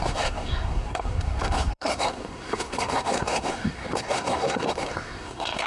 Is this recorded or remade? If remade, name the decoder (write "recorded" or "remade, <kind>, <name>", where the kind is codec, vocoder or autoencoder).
remade, codec, SNAC